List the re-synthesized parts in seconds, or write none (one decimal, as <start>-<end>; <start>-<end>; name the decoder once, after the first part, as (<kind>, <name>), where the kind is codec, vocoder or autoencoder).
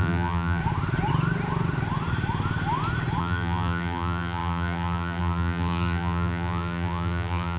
0.0-0.6 (vocoder, BigVGAN v2); 3.2-7.6